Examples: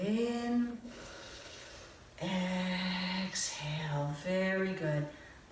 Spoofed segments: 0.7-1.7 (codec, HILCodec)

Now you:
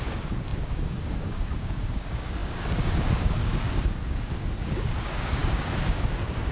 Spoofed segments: 0.0-6.5 (codec, DAC)

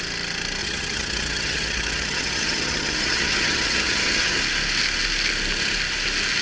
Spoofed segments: 0.6-4.4 (vocoder, HiFi-GAN)